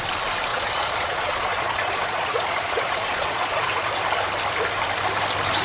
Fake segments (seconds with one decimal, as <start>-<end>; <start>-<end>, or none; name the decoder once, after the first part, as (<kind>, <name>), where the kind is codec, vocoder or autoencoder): 0.5-3.9 (vocoder, Vocos)